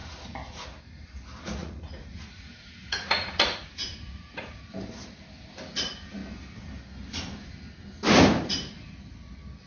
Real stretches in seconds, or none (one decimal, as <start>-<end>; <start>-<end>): 0.0-1.6; 4.6-9.7